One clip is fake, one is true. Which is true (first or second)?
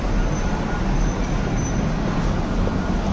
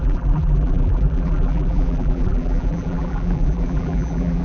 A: first